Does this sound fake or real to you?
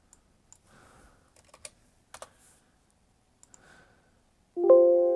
real